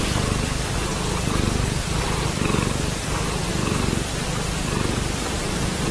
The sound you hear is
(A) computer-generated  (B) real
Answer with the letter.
B